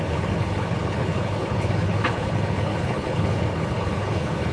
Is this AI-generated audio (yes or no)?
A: yes